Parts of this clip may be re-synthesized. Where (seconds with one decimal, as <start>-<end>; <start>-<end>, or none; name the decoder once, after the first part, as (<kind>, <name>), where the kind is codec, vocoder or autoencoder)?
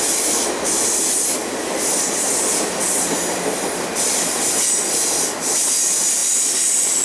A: 1.4-4.4 (vocoder, BigVGAN v2); 6.2-7.0